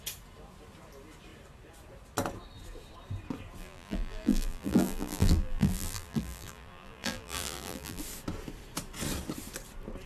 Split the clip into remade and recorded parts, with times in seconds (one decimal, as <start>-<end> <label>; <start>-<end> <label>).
0.0-3.6 recorded; 3.6-8.0 remade; 8.0-10.1 recorded